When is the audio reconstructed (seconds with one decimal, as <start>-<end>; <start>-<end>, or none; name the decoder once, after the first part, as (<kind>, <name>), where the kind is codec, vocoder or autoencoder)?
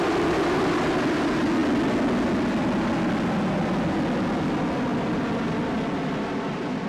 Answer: none